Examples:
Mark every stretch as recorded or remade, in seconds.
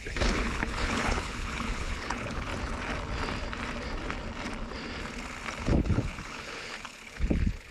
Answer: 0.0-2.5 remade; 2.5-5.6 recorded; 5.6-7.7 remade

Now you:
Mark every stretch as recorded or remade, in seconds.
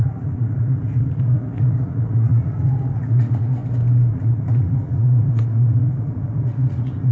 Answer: 0.0-3.6 remade; 3.6-4.1 recorded; 4.1-7.1 remade